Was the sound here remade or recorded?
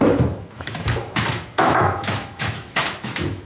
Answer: remade